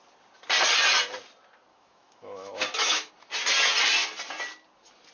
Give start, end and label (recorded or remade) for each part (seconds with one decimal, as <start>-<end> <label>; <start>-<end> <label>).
0.0-1.7 recorded; 1.7-3.1 remade; 3.1-5.1 recorded